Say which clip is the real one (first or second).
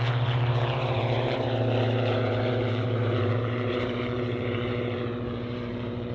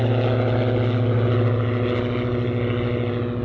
second